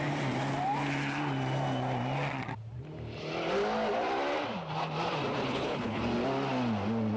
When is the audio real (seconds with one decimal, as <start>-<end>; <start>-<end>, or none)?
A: 0.0-5.4; 6.0-7.2